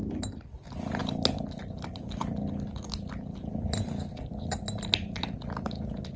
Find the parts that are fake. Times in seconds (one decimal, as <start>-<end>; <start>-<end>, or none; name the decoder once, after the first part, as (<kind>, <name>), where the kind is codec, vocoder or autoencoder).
none

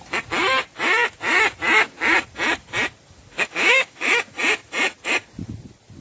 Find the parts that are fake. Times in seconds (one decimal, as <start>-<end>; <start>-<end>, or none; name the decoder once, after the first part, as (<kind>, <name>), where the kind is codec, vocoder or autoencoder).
3.3-4.1 (codec, DAC)

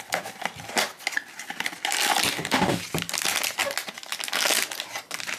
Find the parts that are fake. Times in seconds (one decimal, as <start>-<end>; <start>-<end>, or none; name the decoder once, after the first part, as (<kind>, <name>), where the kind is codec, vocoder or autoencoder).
2.3-2.8 (codec, DAC)

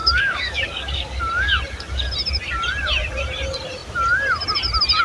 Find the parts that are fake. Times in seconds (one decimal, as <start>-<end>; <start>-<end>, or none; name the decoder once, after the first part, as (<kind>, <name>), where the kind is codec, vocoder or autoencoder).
0.0-1.6 (codec, DAC)

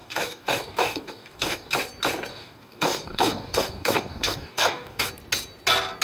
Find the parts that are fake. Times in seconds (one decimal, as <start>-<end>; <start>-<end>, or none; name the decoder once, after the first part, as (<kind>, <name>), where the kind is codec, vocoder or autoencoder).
0.0-1.7 (codec, DAC); 2.3-5.1

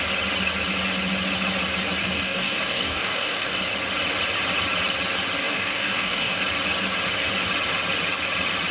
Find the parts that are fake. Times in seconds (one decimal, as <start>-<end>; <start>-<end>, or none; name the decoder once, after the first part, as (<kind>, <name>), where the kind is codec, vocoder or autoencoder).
2.0-3.6 (codec, DAC); 5.4-6.4

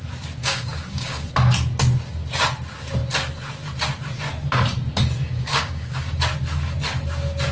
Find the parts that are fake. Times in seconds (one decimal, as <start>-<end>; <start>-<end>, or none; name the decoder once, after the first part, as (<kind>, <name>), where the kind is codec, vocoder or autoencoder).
0.4-1.3 (codec, DAC); 5.2-6.2

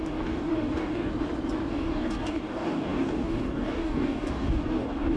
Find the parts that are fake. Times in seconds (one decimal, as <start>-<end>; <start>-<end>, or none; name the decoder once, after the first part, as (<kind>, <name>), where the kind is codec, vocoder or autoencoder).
0.0-1.1 (codec, DAC); 1.7-5.2